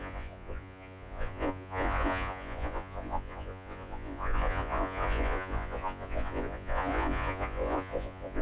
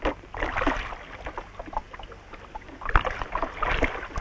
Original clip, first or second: second